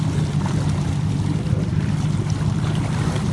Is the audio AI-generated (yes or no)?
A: yes